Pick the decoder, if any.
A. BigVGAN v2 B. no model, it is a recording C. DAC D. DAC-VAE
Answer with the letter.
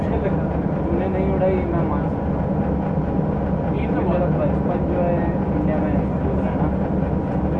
B